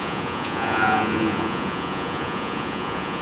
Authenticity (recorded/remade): remade